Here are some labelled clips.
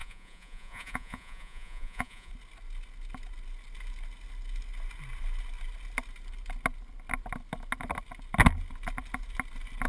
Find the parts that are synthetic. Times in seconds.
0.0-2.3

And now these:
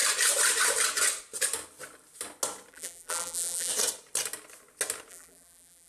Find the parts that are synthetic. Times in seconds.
2.7-3.7; 5.1-5.9

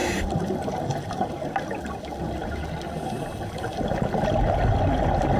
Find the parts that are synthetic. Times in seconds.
none

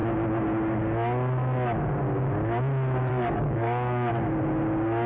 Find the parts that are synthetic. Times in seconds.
3.1-4.2

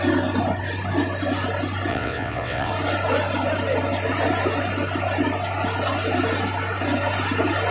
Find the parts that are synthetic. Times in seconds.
1.9-2.7

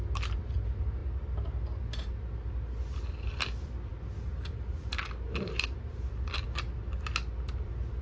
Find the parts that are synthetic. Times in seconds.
none